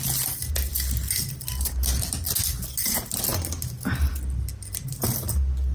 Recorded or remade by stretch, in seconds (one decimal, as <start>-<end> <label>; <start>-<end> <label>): 0.0-5.7 recorded